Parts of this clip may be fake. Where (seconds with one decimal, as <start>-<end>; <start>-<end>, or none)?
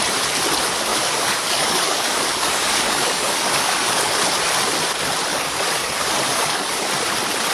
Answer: 0.9-4.1; 5.3-6.9